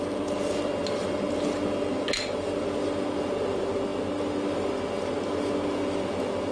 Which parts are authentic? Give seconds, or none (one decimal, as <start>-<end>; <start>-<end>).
0.0-6.5